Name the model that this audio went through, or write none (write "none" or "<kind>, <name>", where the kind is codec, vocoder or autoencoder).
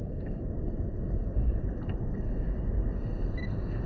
none